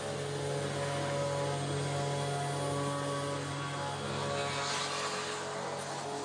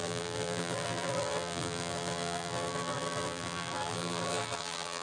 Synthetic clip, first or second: second